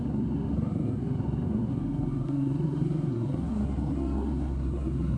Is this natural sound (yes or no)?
no